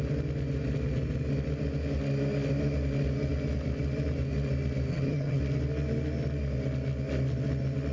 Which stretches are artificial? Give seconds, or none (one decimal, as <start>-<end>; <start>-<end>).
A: 4.9-5.4